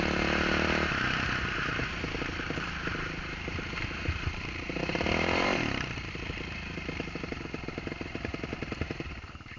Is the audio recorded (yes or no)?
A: no